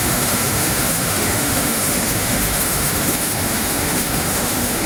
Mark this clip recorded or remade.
remade